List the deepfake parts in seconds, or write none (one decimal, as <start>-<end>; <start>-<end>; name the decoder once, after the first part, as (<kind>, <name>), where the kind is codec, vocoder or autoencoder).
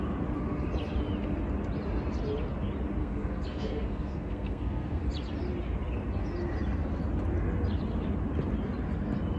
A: 3.0-5.0 (codec, SNAC)